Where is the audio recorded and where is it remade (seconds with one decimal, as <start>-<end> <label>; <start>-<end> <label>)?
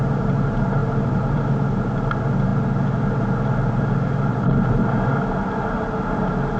0.0-0.8 recorded; 0.8-1.4 remade; 1.4-6.6 recorded